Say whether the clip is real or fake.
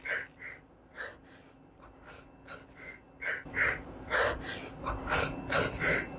real